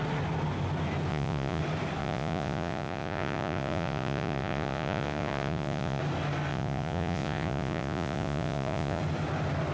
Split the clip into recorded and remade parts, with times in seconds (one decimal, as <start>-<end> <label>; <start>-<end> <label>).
0.0-1.1 recorded; 1.1-1.6 remade; 1.6-2.0 recorded; 2.0-6.0 remade; 6.0-6.5 recorded; 6.5-9.0 remade; 9.0-9.7 recorded